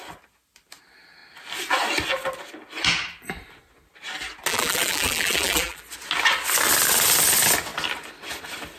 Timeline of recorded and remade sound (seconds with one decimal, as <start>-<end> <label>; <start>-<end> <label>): 0.0-4.5 recorded; 4.5-5.8 remade; 5.8-8.8 recorded